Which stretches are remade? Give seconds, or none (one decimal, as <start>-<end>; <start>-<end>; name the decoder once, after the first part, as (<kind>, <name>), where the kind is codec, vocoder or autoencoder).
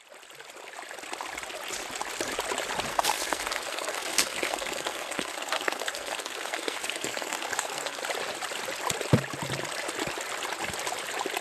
2.9-8.0 (codec, SNAC)